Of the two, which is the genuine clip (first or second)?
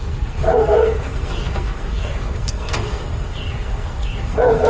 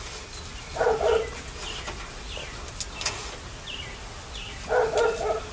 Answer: second